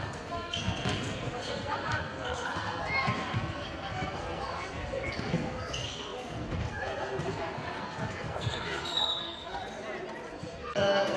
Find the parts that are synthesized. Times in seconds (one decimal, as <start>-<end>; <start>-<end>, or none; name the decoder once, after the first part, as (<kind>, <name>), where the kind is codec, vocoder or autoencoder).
0.0-9.6 (codec, SNAC); 10.3-11.2